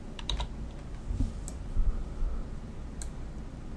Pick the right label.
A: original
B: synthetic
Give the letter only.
A